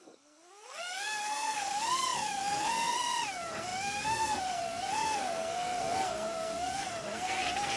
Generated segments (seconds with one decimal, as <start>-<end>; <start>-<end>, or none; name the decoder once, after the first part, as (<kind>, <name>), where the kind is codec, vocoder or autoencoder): 0.0-7.8 (codec, SNAC)